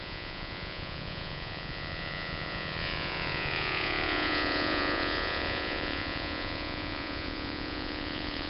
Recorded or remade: remade